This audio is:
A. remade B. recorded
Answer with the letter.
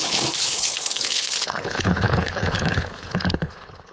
A